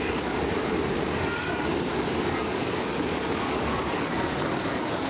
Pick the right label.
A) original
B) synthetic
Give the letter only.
B